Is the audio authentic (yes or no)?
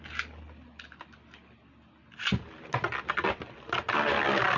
yes